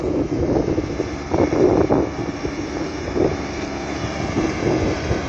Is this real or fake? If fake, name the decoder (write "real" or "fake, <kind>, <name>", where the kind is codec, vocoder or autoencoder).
real